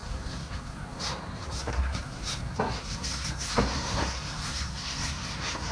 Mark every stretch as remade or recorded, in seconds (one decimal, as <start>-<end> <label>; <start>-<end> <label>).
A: 0.0-5.7 remade